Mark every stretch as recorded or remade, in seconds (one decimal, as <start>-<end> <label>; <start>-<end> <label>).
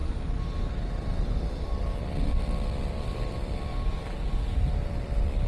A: 0.0-3.3 recorded; 3.3-3.7 remade; 3.7-5.0 recorded; 5.0-5.5 remade